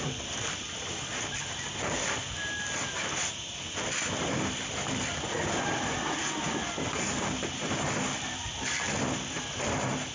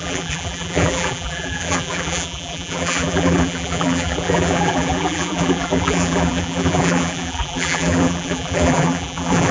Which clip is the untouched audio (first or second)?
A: first